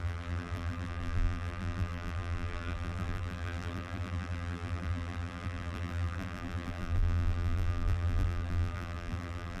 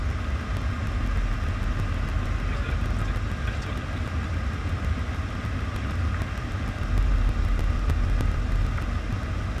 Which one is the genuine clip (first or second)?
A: second